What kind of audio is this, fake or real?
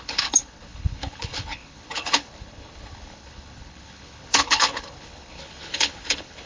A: fake